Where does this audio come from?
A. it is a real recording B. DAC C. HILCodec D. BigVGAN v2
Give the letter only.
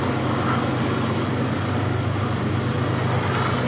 A